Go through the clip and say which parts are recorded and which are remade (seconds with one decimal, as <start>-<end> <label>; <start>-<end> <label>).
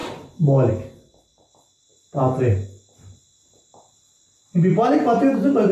0.0-5.7 recorded